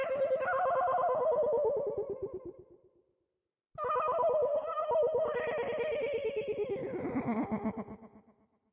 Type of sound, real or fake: real